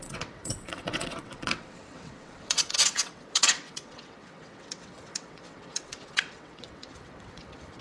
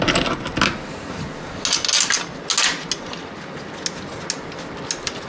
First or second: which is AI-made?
first